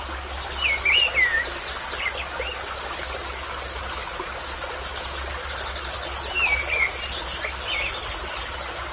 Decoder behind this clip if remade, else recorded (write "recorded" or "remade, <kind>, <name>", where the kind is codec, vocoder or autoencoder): recorded